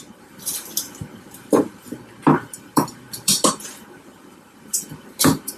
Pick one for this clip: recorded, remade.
remade